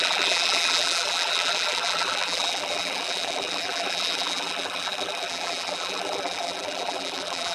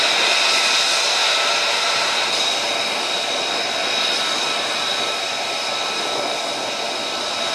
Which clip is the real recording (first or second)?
second